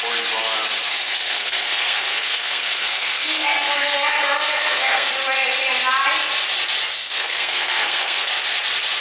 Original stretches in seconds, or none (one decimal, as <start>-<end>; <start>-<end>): 0.0-0.9; 5.1-7.0; 8.3-9.0